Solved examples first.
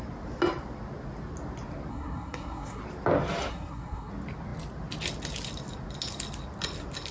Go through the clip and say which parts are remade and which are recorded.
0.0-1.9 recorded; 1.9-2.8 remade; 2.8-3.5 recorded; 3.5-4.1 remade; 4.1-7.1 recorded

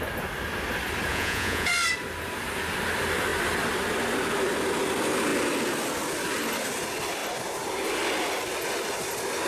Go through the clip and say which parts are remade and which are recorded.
0.0-1.1 recorded; 1.1-1.7 remade; 1.7-9.5 recorded

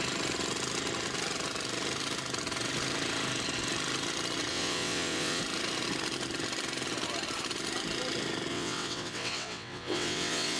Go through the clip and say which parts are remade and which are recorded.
0.0-4.5 recorded; 4.5-5.4 remade; 5.4-8.5 recorded; 8.5-10.6 remade

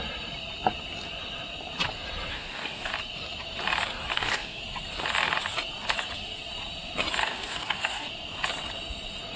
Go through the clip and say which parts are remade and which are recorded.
0.0-2.3 recorded; 2.3-2.9 remade; 2.9-4.1 recorded; 4.1-4.6 remade; 4.6-7.2 recorded; 7.2-8.1 remade; 8.1-9.4 recorded